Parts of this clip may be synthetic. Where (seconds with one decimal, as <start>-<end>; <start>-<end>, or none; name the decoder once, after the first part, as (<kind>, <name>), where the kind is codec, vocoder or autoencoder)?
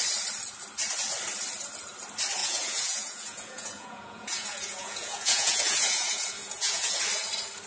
2.4-7.0 (vocoder, Vocos)